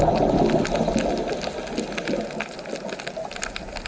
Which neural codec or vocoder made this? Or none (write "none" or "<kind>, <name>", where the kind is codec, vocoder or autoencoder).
none